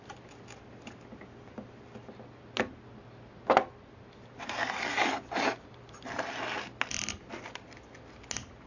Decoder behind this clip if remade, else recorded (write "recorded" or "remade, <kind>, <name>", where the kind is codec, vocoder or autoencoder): recorded